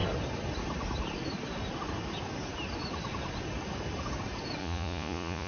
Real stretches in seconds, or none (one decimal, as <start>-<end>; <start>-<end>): 0.0-4.6